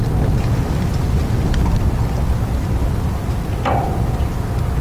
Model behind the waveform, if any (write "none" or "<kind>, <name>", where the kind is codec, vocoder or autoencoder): none